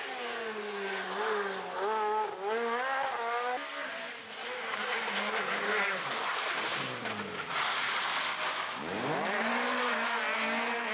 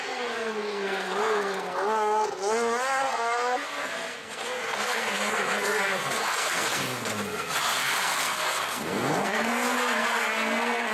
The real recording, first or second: first